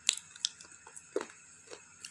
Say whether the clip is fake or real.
real